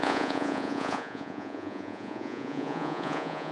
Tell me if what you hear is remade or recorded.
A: remade